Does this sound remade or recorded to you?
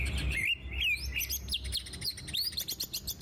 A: recorded